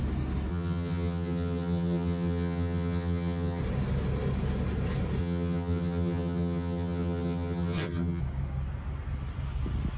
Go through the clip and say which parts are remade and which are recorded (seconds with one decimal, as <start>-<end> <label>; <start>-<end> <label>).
0.0-0.5 recorded; 0.5-3.6 remade; 3.6-5.2 recorded; 5.2-8.2 remade; 8.2-10.0 recorded